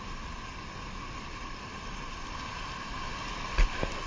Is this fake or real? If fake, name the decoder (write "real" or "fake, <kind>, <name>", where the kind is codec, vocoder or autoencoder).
real